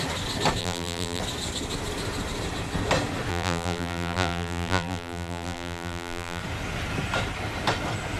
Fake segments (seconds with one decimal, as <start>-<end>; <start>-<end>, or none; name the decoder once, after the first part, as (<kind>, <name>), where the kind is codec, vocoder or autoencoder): 0.6-1.2 (vocoder, BigVGAN v2); 3.3-6.4